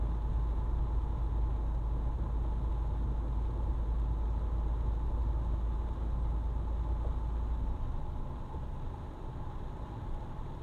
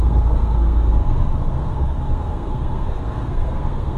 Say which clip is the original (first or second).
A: first